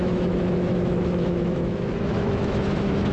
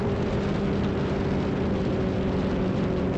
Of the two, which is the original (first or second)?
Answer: second